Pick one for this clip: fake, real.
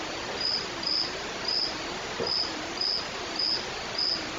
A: real